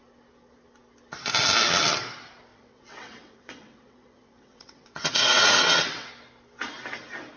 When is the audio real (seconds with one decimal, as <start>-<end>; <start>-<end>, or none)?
0.0-2.5; 6.1-7.4